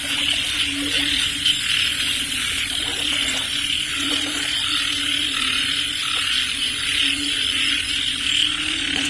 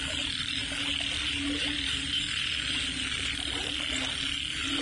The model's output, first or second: first